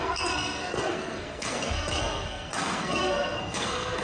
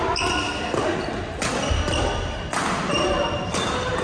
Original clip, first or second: second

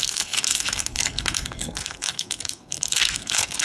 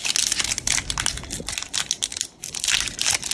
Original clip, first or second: second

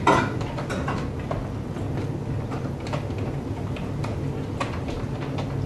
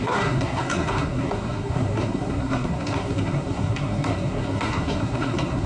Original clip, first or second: first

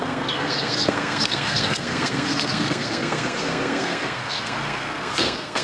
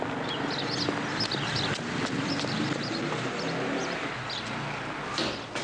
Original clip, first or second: second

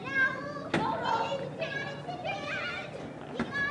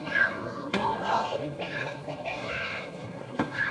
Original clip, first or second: first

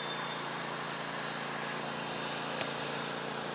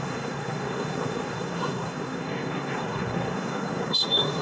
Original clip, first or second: first